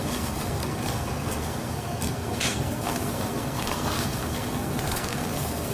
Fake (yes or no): yes